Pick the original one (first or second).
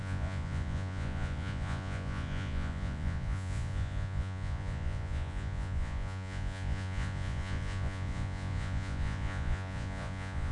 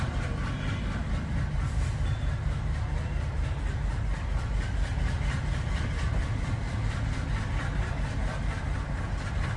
second